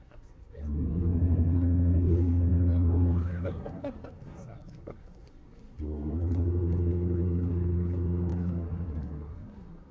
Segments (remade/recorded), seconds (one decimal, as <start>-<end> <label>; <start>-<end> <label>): 0.0-9.9 remade